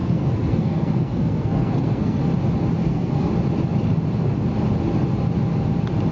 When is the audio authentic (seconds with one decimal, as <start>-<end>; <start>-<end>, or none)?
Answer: 2.2-2.8; 3.3-6.1